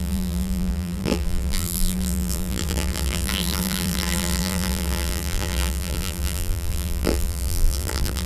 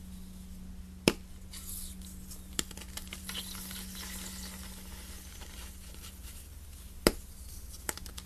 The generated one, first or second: first